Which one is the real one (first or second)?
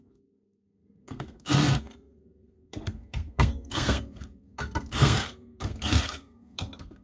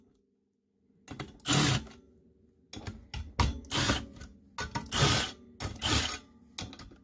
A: second